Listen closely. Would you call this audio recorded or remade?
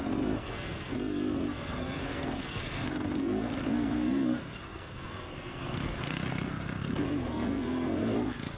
remade